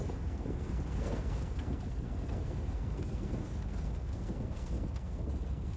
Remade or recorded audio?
remade